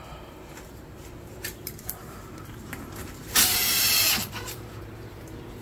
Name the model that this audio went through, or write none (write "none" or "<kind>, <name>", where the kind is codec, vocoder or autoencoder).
vocoder, BigVGAN v2